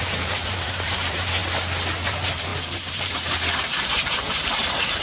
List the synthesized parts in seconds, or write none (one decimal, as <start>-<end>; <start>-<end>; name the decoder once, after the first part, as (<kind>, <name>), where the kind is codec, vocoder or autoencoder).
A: 0.0-1.4 (vocoder, BigVGAN v2); 2.1-5.0